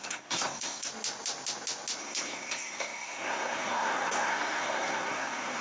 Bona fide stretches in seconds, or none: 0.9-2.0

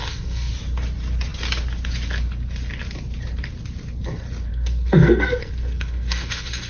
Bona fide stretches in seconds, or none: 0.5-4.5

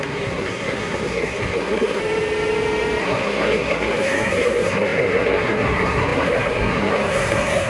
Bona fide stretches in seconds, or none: 2.0-3.0

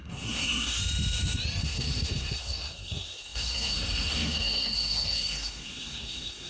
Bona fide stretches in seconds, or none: 0.8-1.6

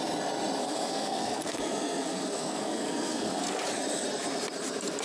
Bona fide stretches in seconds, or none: 0.0-0.6; 3.6-5.0